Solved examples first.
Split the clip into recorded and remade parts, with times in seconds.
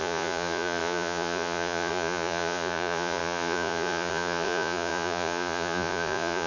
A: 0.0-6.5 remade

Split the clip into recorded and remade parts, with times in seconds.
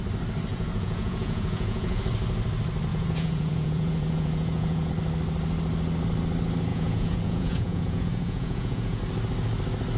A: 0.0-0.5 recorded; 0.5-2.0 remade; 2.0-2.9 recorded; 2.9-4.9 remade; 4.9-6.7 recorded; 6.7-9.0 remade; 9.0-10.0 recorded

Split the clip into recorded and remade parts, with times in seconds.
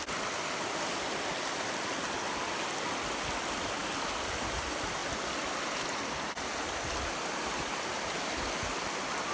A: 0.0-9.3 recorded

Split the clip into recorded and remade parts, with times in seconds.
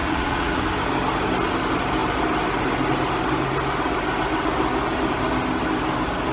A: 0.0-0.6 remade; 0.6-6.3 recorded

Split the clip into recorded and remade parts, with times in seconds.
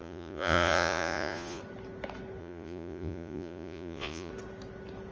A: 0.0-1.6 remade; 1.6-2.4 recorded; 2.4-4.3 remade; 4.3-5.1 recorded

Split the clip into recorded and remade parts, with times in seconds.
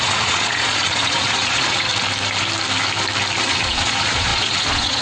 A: 0.0-1.9 remade; 1.9-3.4 recorded; 3.4-5.0 remade